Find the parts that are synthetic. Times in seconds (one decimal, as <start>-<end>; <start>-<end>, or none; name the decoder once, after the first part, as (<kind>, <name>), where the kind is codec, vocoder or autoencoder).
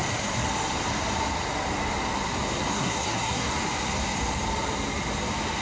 2.7-3.5 (codec, SNAC)